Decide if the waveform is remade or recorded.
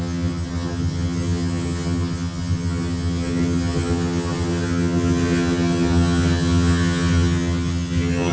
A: remade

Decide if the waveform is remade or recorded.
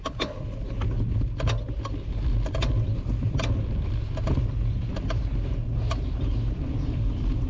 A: recorded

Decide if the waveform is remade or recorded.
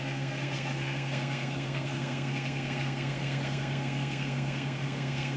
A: remade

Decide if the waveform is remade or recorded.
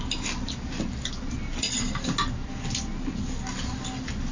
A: recorded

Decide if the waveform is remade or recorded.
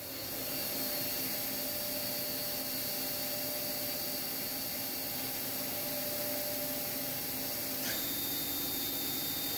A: recorded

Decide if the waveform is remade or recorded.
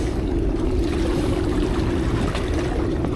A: recorded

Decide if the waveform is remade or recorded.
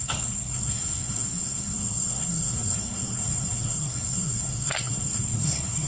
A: remade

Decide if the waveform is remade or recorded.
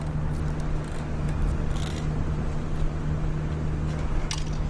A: recorded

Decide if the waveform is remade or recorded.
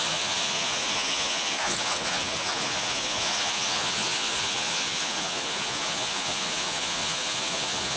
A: remade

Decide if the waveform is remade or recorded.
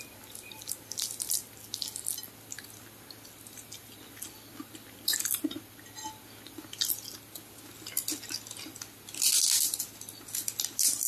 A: recorded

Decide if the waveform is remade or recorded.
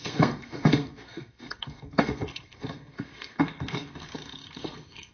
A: remade